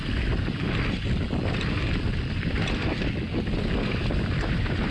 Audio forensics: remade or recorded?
recorded